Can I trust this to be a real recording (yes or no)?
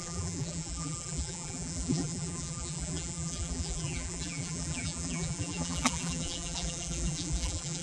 no